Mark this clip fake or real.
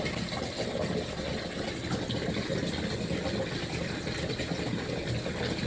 real